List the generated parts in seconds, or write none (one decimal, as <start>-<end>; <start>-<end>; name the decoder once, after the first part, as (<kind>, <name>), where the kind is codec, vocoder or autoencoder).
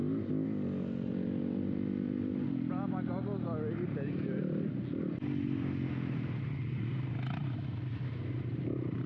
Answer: none